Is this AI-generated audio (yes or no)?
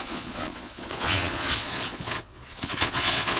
yes